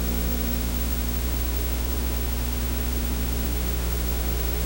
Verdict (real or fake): fake